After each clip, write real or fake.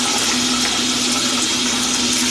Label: real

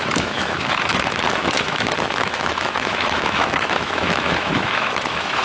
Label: fake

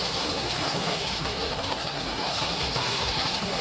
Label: fake